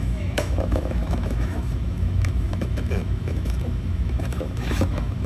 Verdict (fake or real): fake